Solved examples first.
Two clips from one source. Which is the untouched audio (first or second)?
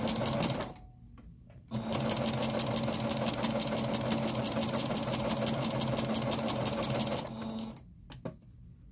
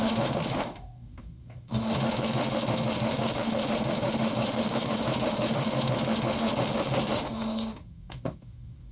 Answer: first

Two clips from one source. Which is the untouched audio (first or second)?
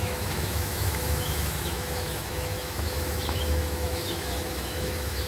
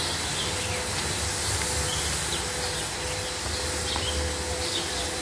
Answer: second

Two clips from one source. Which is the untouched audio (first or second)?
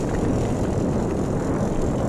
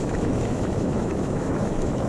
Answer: first